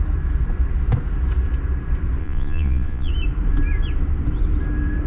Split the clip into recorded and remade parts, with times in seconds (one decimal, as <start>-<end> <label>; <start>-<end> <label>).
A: 0.0-2.2 recorded; 2.2-3.1 remade; 3.1-5.1 recorded